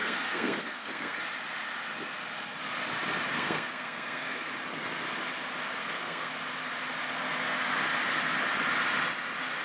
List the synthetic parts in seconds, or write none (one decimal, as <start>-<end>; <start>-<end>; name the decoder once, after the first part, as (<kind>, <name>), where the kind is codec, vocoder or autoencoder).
0.0-1.2 (codec, SNAC); 3.3-4.5; 5.8-6.3